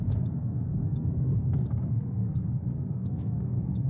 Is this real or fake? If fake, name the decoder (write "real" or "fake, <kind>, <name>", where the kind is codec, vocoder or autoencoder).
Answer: fake, codec, SNAC